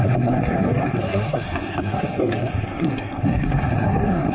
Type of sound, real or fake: fake